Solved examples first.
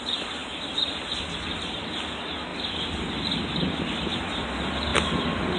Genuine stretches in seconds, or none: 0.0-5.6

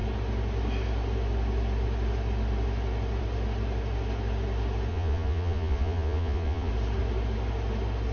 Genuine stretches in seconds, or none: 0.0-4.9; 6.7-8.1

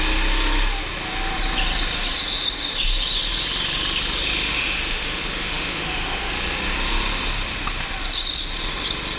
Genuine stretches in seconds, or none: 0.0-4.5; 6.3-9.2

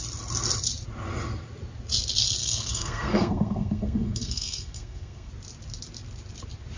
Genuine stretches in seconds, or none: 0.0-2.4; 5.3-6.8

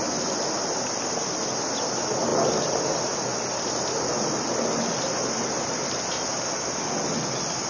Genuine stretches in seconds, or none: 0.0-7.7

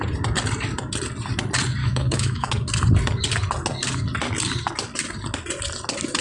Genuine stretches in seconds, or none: 0.0-1.8; 2.5-6.2

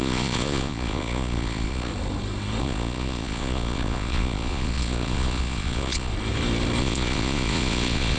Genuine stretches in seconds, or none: 1.9-2.6; 6.1-6.8